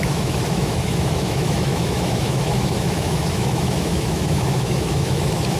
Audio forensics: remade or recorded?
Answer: remade